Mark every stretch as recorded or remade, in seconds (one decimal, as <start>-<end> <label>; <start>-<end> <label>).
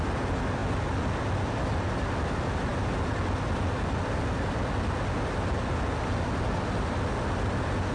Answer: 0.0-7.9 recorded